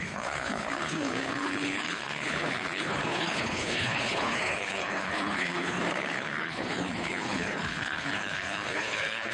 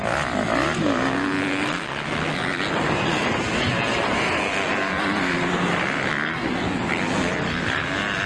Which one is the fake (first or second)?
first